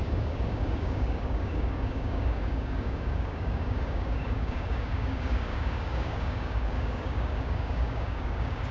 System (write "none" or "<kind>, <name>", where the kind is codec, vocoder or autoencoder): codec, DAC